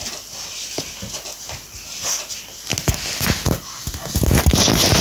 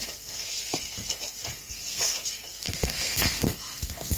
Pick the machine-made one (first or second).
second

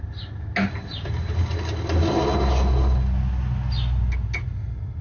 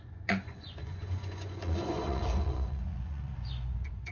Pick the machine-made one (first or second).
second